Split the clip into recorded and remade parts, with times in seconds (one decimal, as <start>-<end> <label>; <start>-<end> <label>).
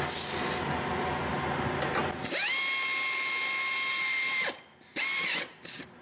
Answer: 0.0-6.0 recorded